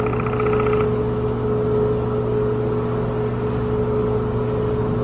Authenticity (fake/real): real